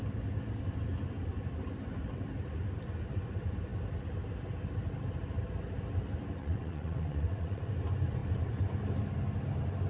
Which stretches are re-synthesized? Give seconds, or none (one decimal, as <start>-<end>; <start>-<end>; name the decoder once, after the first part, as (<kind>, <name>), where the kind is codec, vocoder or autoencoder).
6.4-7.6 (vocoder, WaveNeXt)